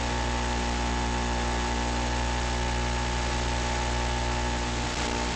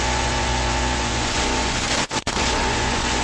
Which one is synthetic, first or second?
second